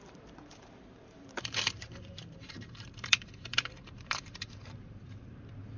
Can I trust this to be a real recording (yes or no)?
no